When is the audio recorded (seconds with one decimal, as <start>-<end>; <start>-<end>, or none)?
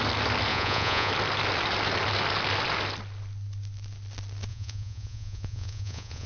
0.0-0.5; 1.1-4.5